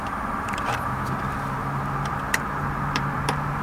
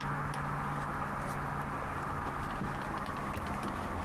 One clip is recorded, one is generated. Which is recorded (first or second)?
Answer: second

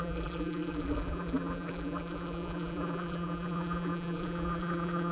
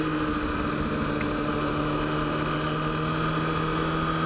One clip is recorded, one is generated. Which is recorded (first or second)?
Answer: second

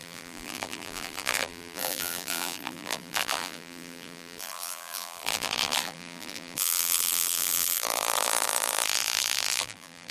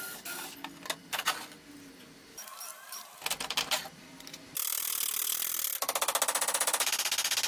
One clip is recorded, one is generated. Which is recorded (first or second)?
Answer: second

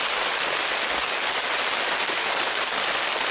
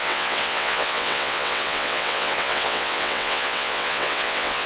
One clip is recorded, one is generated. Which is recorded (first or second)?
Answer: first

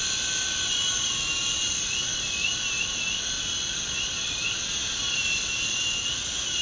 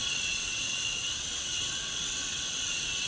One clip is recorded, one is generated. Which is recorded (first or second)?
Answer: first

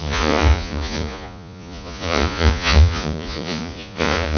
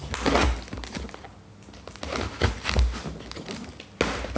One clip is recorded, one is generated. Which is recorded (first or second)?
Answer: second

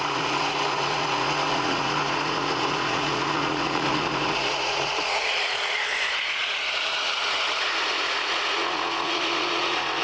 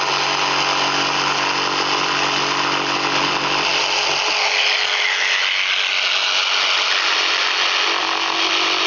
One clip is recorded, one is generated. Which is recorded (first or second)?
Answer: second